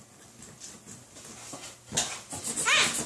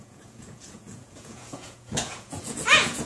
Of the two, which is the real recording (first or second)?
first